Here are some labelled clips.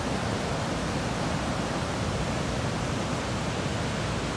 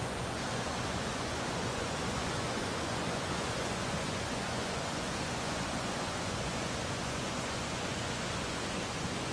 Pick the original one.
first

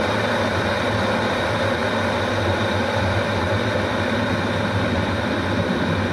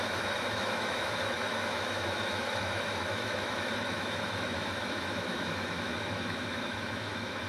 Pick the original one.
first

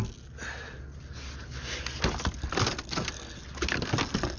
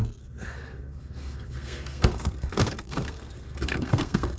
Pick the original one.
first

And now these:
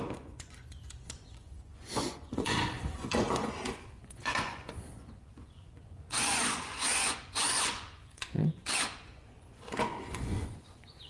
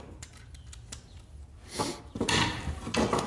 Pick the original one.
second